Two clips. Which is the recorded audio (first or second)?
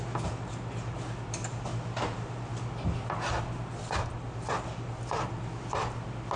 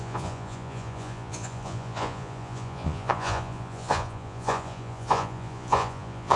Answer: first